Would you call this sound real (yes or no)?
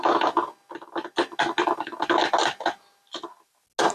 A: yes